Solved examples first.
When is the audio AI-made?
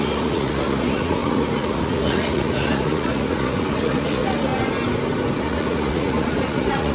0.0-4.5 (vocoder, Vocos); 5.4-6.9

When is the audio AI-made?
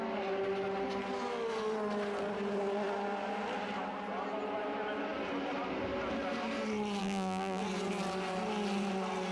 7.0-7.6 (vocoder, BigVGAN v2)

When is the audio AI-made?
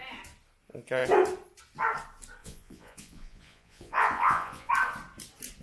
2.4-4.7 (vocoder, Vocos)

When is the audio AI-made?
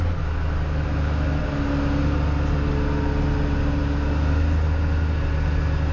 none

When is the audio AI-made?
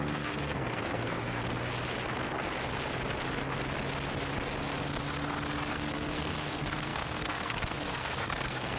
0.0-1.4 (codec, SNAC); 5.7-8.8